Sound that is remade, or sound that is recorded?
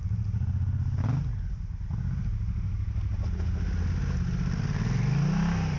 recorded